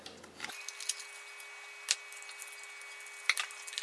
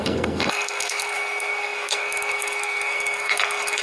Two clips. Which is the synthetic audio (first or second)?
second